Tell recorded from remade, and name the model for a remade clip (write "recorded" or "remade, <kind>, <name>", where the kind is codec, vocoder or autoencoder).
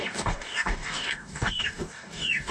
remade, codec, DAC